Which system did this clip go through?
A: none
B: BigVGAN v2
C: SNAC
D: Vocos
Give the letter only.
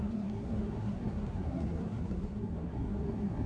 C